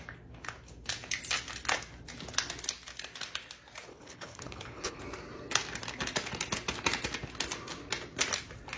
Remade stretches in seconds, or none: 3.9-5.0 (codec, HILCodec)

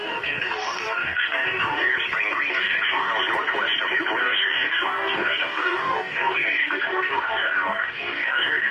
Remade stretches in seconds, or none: 0.0-1.9 (codec, DAC); 2.5-3.1; 4.2-8.7

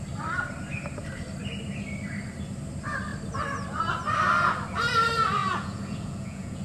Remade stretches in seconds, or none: 5.4-6.6 (vocoder, Vocos)

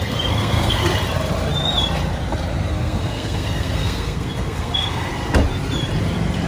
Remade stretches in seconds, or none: 0.0-0.8 (codec, SNAC); 2.7-5.1

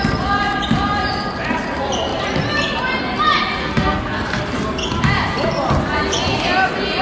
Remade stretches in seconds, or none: 3.6-4.4 (codec, SNAC)

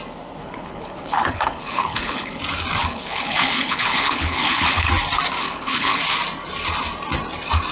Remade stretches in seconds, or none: 0.4-2.4 (codec, HILCodec); 2.8-4.9; 5.4-6.0

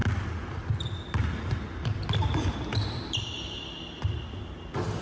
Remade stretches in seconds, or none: 0.0-3.0 (vocoder, BigVGAN v2)

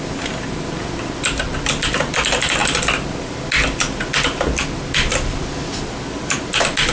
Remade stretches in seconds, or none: none